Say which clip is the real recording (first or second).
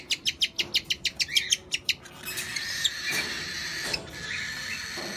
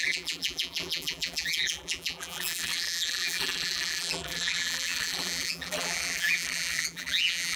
first